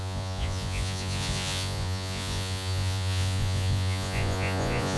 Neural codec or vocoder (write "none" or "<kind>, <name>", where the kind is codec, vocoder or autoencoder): vocoder, Vocos